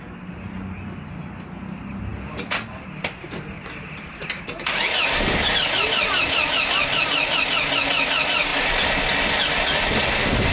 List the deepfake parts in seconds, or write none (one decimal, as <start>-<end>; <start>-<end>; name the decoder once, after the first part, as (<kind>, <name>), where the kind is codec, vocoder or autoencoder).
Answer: none